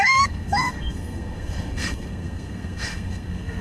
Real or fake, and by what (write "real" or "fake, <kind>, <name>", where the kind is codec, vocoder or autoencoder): fake, codec, SNAC